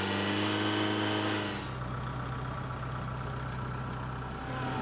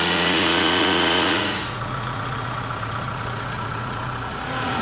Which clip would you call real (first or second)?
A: first